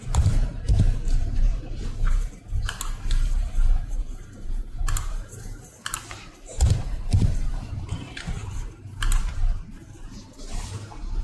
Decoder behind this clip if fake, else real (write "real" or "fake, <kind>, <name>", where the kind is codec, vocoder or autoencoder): fake, vocoder, BigVGAN v2